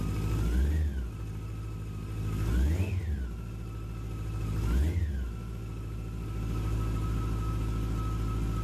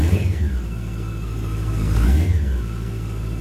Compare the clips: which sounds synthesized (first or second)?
second